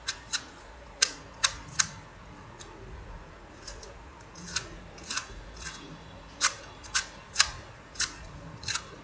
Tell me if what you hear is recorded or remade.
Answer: remade